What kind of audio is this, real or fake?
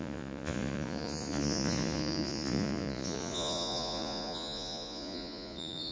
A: fake